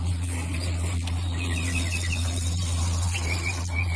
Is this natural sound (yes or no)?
no